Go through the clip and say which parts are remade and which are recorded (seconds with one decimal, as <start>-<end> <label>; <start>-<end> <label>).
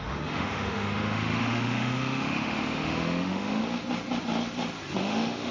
0.0-3.6 remade; 3.6-4.9 recorded; 4.9-5.5 remade